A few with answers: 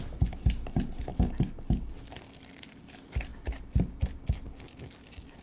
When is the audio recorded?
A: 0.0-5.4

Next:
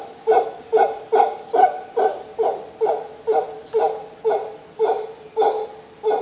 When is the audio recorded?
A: 0.0-6.2

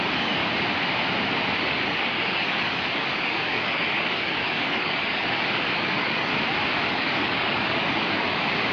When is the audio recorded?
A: 0.4-1.6; 6.3-6.9

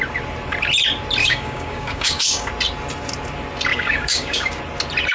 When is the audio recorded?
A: 0.0-1.2; 2.5-3.7; 4.6-5.1

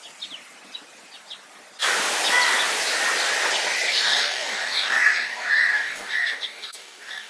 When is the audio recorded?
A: 0.0-3.9

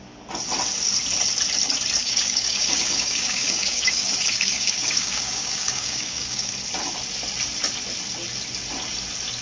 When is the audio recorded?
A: 0.0-2.0; 6.5-9.4